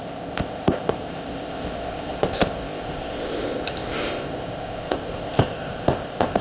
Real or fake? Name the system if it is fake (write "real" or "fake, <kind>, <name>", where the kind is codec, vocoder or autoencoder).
fake, codec, ZipCodec